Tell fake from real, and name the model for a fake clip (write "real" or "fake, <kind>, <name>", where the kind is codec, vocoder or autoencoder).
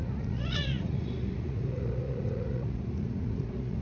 fake, vocoder, Vocos